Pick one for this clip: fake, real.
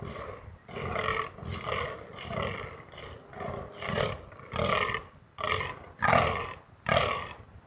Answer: real